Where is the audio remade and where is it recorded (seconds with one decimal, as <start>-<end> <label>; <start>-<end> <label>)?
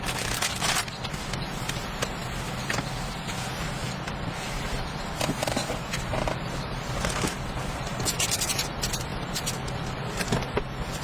0.0-11.0 recorded